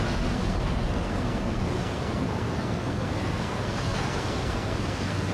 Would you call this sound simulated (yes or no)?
yes